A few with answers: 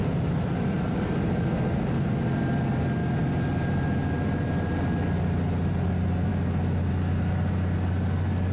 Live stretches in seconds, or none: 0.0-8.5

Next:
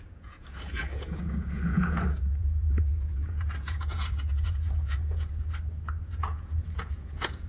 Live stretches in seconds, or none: 5.5-6.0

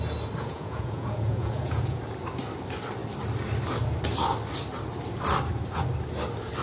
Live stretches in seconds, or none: 0.0-0.4; 2.0-6.6

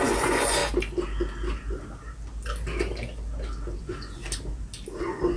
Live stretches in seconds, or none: 0.6-3.8; 4.2-5.0

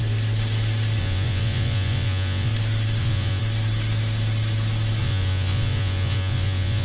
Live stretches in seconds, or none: 0.0-1.0; 2.5-3.0; 3.4-5.0

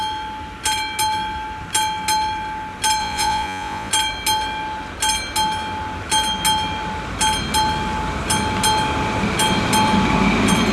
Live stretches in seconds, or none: 0.0-3.0; 3.9-10.7

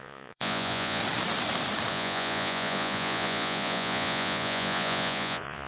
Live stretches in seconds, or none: 1.0-1.9

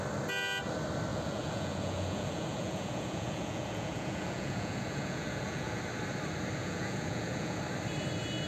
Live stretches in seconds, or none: 0.0-1.1; 5.8-6.6; 7.6-8.5